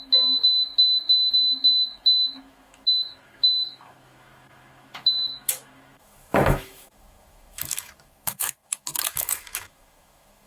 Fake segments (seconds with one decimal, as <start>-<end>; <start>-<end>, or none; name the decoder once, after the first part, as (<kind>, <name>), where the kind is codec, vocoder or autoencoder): 0.0-10.5 (autoencoder, DAC-VAE)